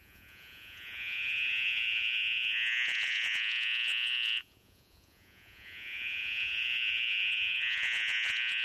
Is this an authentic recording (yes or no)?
no